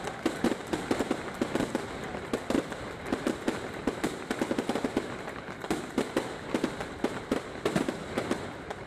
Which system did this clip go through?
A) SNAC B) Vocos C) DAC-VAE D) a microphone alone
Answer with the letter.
D